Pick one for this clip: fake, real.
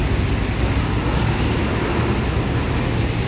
real